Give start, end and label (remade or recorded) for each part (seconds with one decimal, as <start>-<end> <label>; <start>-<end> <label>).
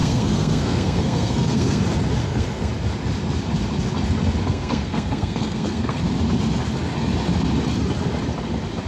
0.0-1.8 remade; 1.8-2.2 recorded; 2.2-2.7 remade; 2.7-4.4 recorded; 4.4-6.0 remade; 6.0-8.9 recorded